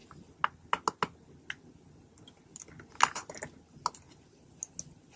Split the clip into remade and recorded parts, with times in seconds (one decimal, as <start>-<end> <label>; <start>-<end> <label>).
0.0-5.2 recorded